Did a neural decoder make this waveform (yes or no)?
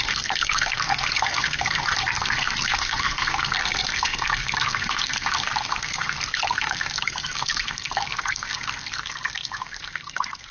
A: yes